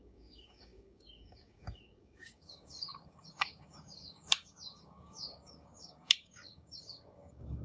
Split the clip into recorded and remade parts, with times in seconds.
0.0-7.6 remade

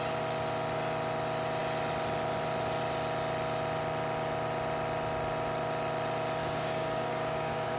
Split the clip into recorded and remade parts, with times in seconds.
0.0-6.4 recorded; 6.4-7.8 remade

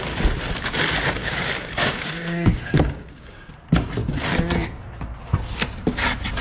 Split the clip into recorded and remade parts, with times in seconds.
0.0-1.2 recorded; 1.2-3.5 remade; 3.5-6.4 recorded

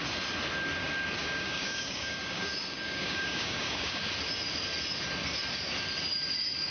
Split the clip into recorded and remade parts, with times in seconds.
0.0-1.2 recorded; 1.2-4.0 remade; 4.0-6.7 recorded

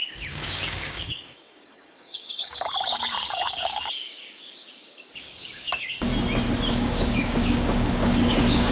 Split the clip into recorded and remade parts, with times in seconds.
0.0-6.1 remade; 6.1-6.7 recorded; 6.7-8.7 remade

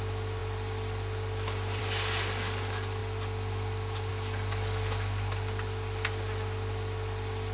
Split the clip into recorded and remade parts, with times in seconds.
0.0-7.5 recorded